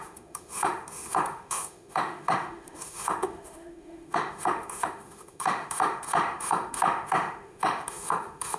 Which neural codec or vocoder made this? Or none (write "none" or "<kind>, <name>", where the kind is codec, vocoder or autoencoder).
autoencoder, DAC-VAE